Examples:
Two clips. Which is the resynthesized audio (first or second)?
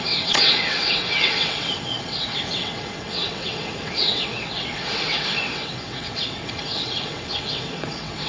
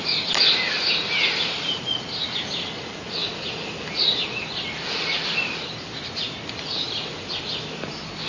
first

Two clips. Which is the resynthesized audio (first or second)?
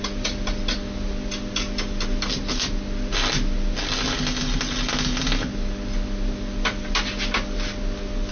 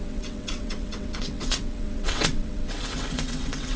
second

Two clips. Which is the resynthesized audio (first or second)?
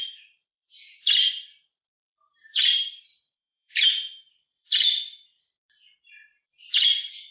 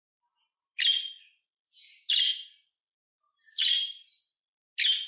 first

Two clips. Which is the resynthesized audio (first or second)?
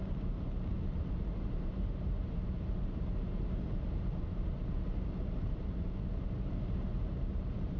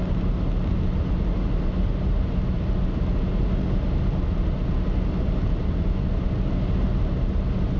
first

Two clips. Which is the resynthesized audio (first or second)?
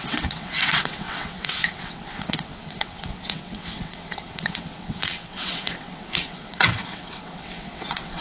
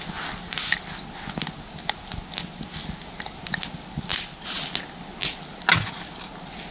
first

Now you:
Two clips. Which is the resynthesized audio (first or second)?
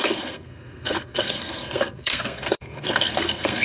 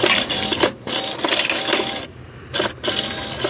first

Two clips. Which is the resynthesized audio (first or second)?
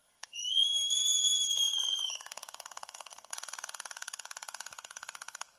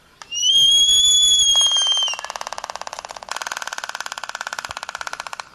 first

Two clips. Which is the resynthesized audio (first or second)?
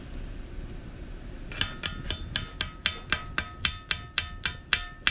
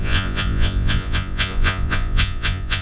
second